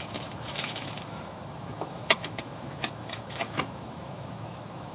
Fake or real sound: fake